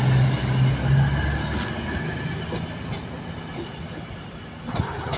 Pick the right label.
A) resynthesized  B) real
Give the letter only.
B